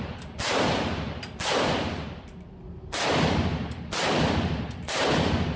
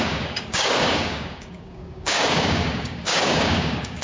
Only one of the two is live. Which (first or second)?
first